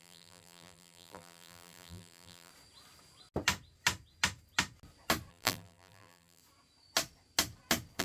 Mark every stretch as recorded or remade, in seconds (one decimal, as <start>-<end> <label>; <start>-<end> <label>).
0.0-2.5 remade; 2.5-5.3 recorded; 5.3-6.4 remade; 6.4-8.0 recorded